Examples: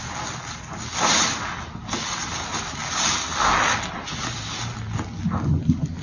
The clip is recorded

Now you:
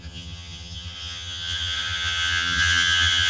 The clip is remade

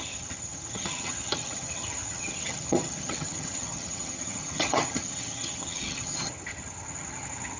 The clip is remade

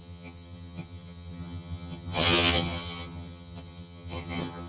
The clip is remade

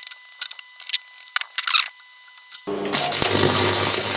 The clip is recorded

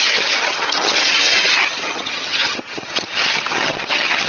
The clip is remade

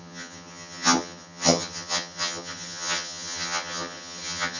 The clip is remade